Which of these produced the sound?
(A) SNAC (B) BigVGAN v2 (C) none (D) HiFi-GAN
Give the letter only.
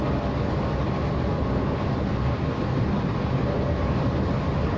C